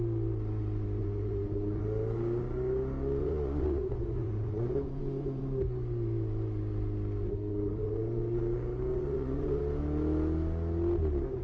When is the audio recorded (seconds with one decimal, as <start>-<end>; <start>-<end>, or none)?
0.0-1.0; 1.8-3.2; 5.4-7.5; 8.4-8.9; 9.6-11.4